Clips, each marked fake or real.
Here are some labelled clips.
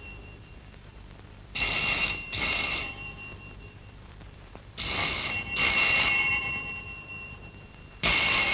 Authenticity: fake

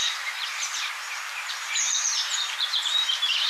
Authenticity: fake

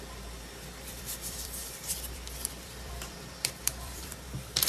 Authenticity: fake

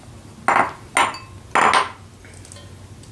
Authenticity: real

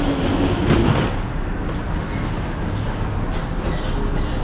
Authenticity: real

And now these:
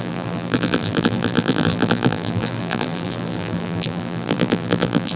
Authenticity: fake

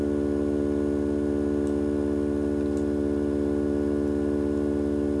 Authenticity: real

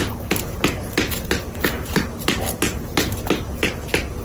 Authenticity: real